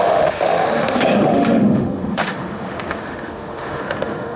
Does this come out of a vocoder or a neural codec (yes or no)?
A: yes